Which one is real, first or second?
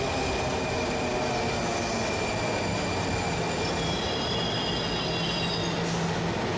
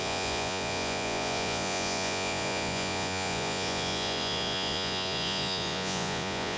first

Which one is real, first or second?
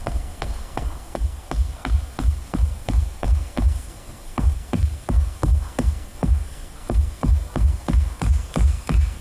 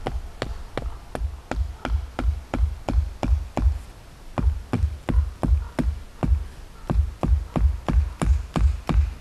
second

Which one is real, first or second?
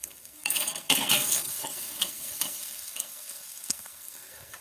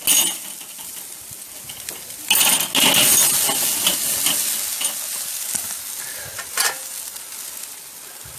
second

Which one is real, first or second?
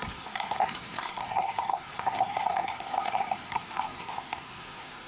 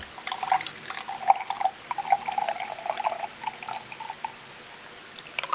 second